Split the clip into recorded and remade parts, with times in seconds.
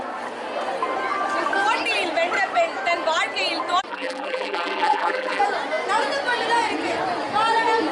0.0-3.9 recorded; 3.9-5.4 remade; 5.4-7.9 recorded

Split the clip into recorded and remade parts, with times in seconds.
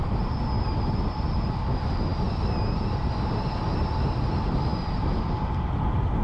0.0-6.2 recorded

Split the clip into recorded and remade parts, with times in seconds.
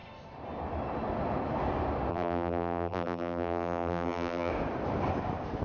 0.0-2.1 recorded; 2.1-4.5 remade; 4.5-5.6 recorded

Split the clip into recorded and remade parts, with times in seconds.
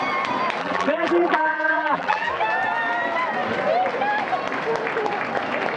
0.0-0.6 recorded; 0.6-2.3 remade; 2.3-5.8 recorded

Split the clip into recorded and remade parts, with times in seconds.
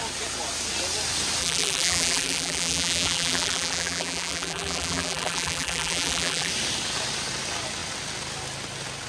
0.0-1.4 recorded; 1.4-6.5 remade; 6.5-9.1 recorded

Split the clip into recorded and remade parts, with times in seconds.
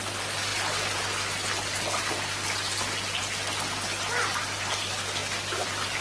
0.0-6.0 recorded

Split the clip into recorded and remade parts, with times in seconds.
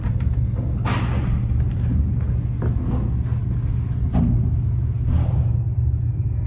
0.0-6.5 recorded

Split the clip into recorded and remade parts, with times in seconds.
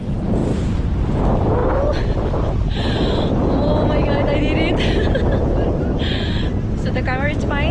0.0-0.4 recorded; 0.4-1.1 remade; 1.1-1.6 recorded; 1.6-3.1 remade; 3.1-7.7 recorded